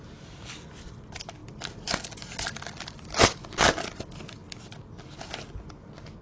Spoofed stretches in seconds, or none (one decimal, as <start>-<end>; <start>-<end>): none